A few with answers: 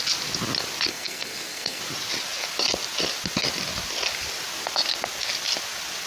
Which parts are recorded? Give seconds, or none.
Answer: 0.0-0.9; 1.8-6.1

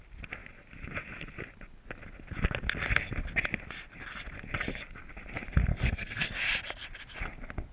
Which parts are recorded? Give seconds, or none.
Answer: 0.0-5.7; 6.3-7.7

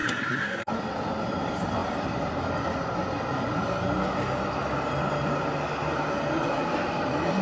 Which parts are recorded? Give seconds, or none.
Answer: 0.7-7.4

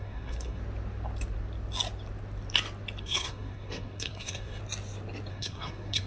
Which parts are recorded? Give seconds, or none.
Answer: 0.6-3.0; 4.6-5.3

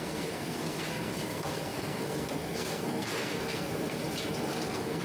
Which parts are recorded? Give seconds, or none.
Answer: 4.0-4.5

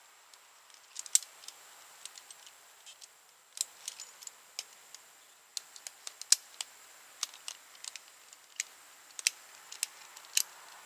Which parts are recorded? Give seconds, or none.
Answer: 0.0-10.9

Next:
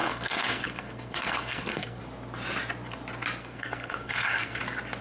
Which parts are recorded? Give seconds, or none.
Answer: 2.0-3.4; 4.6-5.0

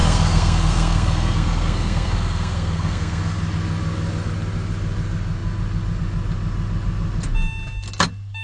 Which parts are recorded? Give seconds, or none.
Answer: 3.2-8.4